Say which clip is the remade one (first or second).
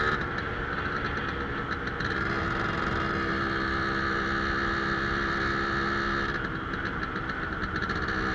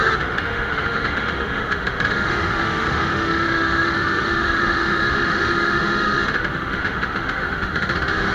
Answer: second